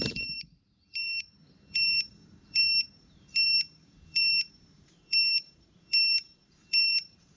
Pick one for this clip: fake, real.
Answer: fake